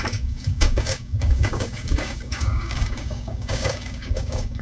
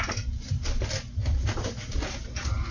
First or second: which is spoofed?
first